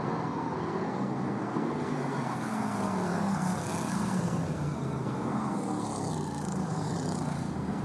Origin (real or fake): fake